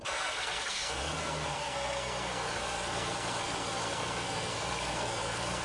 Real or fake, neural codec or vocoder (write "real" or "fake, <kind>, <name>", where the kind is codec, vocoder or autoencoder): fake, codec, SNAC